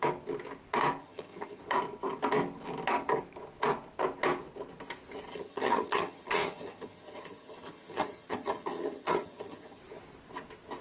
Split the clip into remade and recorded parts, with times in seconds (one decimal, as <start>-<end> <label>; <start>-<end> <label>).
0.0-1.0 recorded; 1.0-1.6 remade; 1.6-5.3 recorded; 5.3-9.8 remade; 9.8-10.8 recorded